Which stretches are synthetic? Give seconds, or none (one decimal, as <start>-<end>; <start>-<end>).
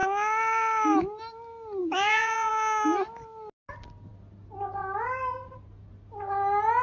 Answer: 1.8-2.5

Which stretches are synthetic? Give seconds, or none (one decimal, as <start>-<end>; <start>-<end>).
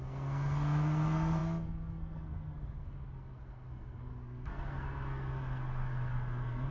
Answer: 0.0-6.7